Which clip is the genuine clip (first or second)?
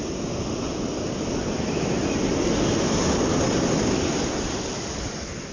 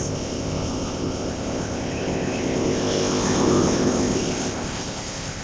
first